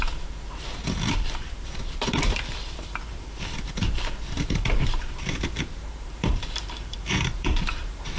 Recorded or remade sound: remade